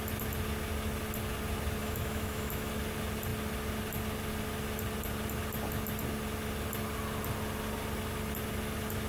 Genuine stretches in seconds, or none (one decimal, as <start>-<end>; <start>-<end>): 0.0-1.8; 2.7-9.1